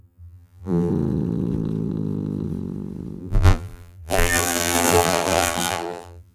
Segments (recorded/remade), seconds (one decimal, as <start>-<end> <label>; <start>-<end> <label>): 0.0-0.9 remade; 0.9-3.2 recorded; 3.2-6.3 remade